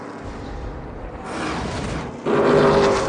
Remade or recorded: recorded